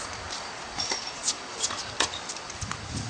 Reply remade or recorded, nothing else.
remade